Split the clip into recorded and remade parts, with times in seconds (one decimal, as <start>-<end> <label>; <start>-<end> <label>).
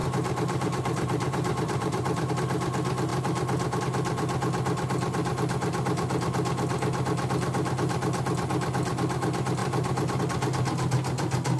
0.0-2.3 remade; 2.3-9.6 recorded; 9.6-10.2 remade; 10.2-11.6 recorded